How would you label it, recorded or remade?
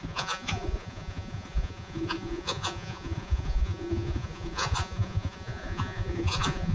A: remade